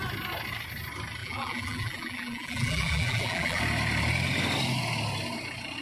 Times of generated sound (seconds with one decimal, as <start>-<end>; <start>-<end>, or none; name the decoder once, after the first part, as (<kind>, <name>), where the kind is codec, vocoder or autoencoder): 1.2-3.6 (vocoder, BigVGAN v2)